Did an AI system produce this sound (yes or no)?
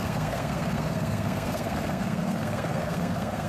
yes